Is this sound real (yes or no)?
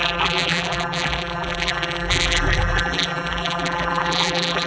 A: no